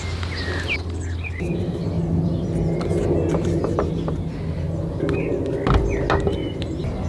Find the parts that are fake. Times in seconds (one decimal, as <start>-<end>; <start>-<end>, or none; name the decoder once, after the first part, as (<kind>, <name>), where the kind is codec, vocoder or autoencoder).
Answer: none